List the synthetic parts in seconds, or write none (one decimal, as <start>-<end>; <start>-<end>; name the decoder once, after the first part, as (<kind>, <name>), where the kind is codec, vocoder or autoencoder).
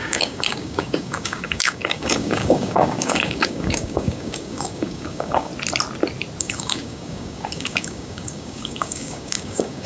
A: 0.0-5.5 (codec, DAC); 6.4-9.9